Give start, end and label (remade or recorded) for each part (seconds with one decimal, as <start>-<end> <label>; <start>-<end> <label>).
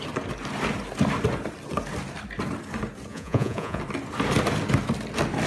0.0-3.1 recorded; 3.1-3.8 remade; 3.8-5.5 recorded